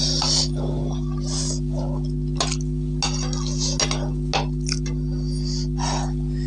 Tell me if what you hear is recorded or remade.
recorded